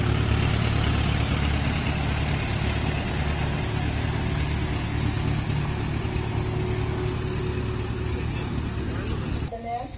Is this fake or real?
real